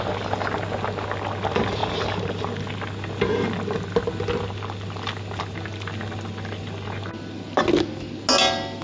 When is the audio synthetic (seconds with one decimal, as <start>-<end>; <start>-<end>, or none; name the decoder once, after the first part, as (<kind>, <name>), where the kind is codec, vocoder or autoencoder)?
none